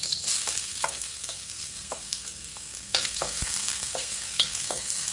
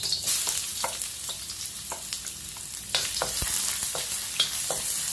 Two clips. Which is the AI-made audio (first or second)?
first